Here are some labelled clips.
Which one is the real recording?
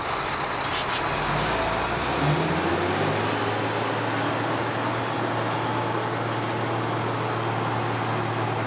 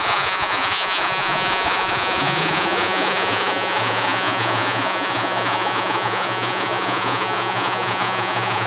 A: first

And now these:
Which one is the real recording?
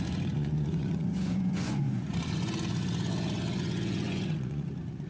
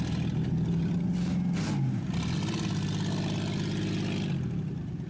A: second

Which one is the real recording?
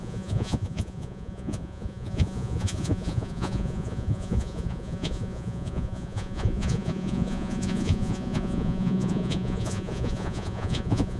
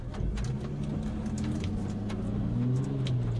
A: second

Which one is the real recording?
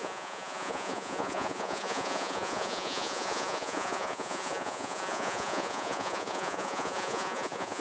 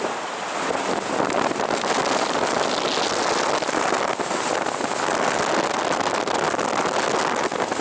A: second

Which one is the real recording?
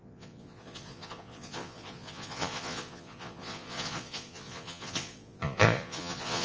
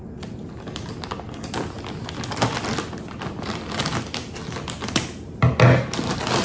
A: second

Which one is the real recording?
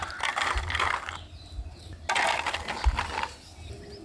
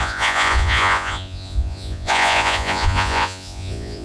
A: first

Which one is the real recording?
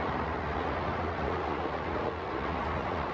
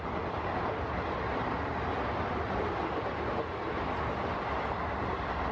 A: second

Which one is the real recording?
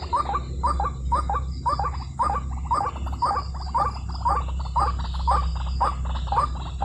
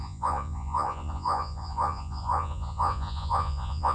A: first